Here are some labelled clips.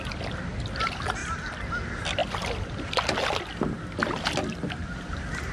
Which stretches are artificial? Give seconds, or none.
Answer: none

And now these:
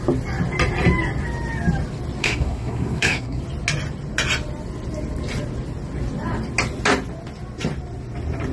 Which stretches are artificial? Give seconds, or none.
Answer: 2.2-3.4 (codec, SNAC)

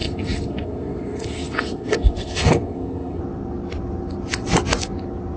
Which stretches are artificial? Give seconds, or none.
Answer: 0.0-3.2 (codec, SNAC)

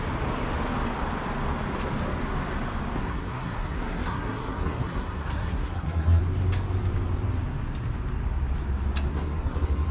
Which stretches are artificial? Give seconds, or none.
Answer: 3.0-6.2 (codec, SNAC); 9.1-9.9

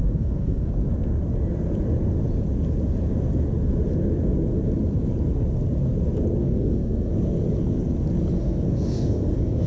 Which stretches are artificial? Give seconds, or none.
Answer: 0.0-0.7 (codec, SNAC); 6.4-7.1; 8.4-9.7

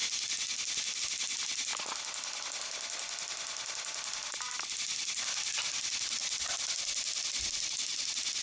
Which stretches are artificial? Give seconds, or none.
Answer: none

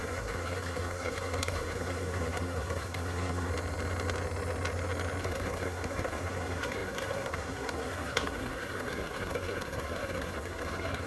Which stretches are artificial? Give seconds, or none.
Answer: 0.0-3.5 (codec, SNAC); 5.2-11.1